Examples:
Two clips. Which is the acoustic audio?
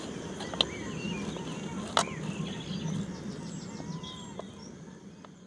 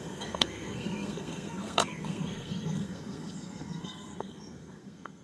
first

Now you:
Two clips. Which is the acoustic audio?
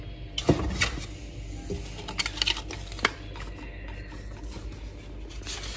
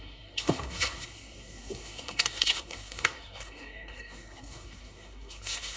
first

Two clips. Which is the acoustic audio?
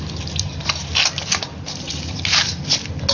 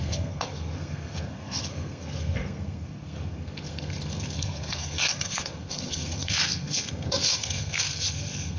first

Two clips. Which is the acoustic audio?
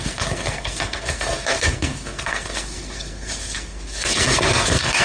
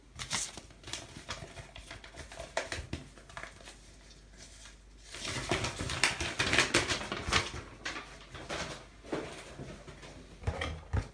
second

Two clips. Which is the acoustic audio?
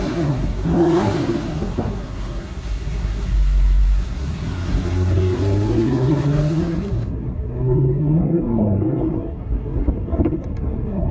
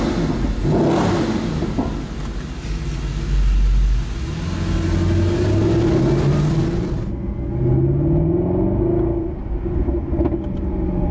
second